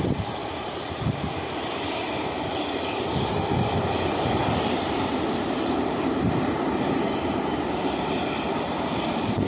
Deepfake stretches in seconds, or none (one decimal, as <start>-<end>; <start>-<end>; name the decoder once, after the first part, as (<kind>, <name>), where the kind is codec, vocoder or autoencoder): 0.0-9.5 (vocoder, BigVGAN v2)